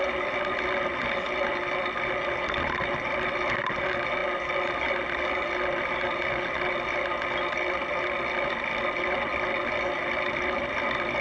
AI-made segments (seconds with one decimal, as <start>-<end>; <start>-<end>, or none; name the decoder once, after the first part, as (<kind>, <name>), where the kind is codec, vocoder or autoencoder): none